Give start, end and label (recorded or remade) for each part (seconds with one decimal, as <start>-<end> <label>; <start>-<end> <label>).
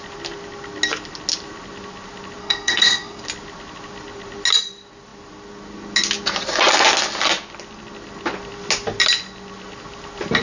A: 0.0-2.4 recorded; 2.4-3.2 remade; 3.2-10.4 recorded